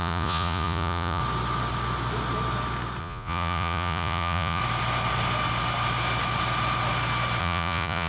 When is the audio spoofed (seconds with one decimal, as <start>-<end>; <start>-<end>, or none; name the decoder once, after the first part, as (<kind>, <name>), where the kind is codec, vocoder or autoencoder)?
0.0-1.2 (vocoder, Vocos); 3.0-4.6; 7.4-8.1